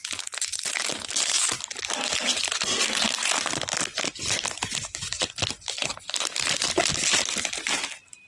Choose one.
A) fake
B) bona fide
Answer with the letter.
B